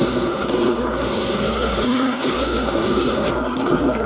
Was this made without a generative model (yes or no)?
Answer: no